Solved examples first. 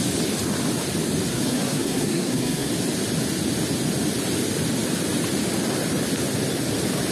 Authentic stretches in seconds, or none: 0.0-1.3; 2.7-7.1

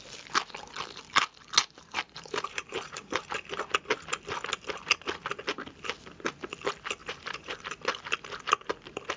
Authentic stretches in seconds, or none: 0.0-1.6; 3.2-7.0; 7.6-9.2

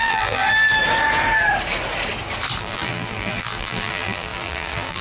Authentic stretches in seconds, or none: 0.4-2.6

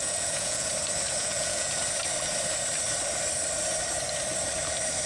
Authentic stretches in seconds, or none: 0.7-1.2; 1.8-5.1